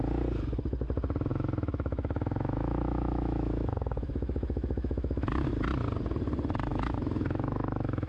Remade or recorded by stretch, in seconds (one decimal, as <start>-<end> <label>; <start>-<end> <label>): 0.0-1.3 recorded; 1.3-5.5 remade; 5.5-6.7 recorded; 6.7-8.1 remade